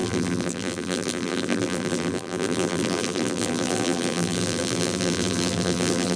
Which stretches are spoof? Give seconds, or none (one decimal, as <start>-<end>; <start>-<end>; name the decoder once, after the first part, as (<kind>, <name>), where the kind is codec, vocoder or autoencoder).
0.0-6.2 (vocoder, BigVGAN v2)